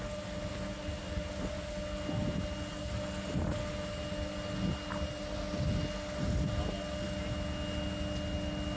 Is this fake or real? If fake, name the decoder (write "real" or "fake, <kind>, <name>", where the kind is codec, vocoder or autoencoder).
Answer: real